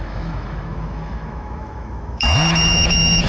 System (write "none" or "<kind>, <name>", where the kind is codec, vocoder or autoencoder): autoencoder, DAC-VAE